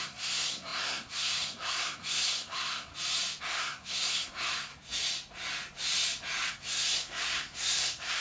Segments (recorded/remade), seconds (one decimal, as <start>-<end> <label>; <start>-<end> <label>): 0.0-2.9 remade; 2.9-3.4 recorded; 3.4-4.7 remade; 4.7-6.5 recorded; 6.5-8.2 remade